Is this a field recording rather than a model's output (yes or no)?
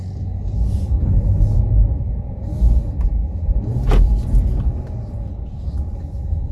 yes